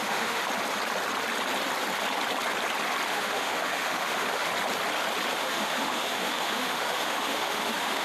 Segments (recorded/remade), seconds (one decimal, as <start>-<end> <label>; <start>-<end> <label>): 0.0-0.4 remade; 0.4-3.1 recorded; 3.1-4.5 remade; 4.5-5.3 recorded; 5.3-8.0 remade